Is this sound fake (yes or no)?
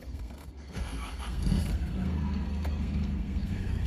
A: yes